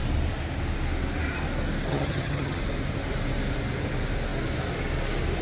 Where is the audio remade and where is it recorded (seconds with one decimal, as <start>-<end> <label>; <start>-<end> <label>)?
0.0-1.9 recorded; 1.9-2.6 remade; 2.6-5.4 recorded